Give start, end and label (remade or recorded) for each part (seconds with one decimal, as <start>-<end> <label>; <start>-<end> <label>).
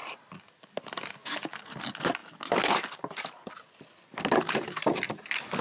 0.0-5.6 recorded